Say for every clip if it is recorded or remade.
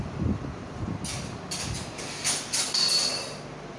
recorded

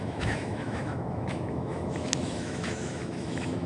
remade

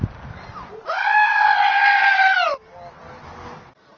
recorded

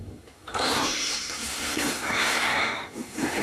remade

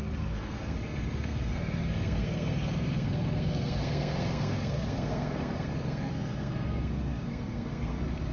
remade